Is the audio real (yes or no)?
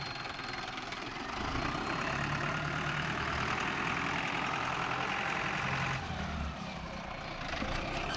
no